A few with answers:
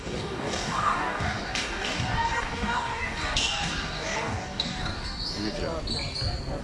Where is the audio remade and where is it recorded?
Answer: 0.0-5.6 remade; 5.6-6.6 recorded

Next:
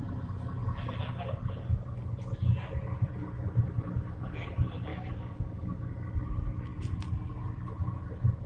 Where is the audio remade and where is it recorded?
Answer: 0.0-4.9 recorded; 4.9-5.9 remade; 5.9-8.5 recorded